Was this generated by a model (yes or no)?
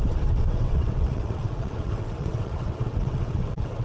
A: yes